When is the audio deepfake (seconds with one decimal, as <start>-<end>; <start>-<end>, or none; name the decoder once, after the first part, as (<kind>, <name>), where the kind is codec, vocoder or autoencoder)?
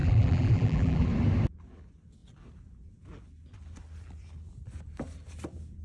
0.0-1.1 (vocoder, BigVGAN v2)